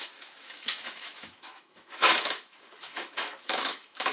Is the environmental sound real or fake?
fake